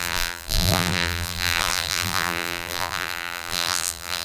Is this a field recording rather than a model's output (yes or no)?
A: no